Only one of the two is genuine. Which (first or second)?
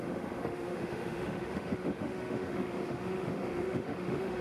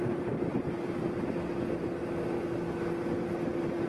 second